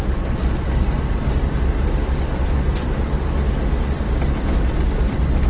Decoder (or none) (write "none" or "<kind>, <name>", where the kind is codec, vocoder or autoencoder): none